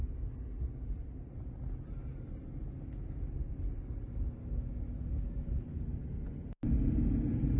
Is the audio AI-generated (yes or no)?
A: no